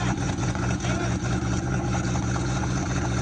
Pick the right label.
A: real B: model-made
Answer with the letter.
B